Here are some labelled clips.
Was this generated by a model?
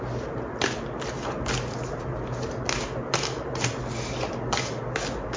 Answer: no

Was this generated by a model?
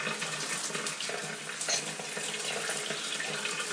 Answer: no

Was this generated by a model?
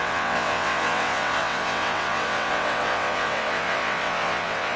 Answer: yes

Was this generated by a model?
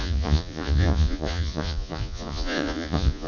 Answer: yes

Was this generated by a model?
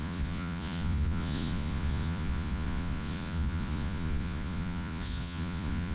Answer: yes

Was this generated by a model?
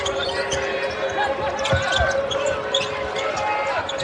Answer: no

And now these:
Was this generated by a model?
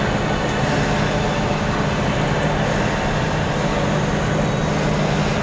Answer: no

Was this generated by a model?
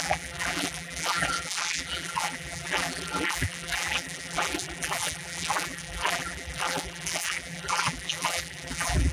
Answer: yes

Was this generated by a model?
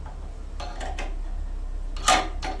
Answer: no